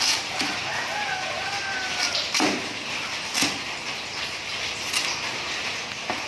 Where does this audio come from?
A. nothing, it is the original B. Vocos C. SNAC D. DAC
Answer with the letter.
A